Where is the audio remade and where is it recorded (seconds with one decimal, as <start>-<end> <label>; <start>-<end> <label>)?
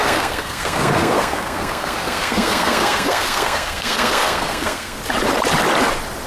0.0-5.0 remade; 5.0-6.3 recorded